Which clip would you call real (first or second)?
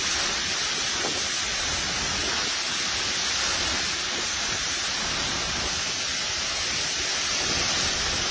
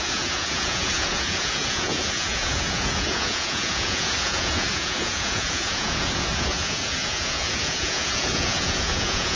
first